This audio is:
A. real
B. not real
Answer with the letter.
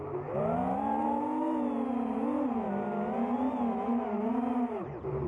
A